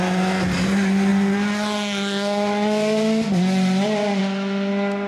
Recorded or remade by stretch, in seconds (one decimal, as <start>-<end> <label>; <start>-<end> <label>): 0.0-5.1 recorded